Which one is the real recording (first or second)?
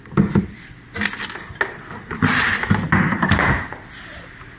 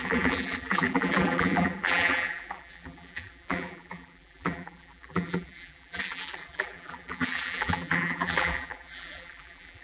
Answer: first